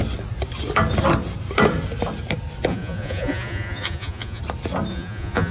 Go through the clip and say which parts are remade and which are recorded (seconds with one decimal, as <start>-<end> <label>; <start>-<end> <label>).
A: 0.0-2.7 recorded; 2.7-4.4 remade; 4.4-4.9 recorded; 4.9-5.5 remade